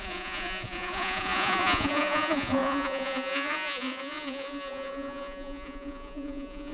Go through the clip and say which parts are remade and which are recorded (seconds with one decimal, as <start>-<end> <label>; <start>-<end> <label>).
0.0-6.7 remade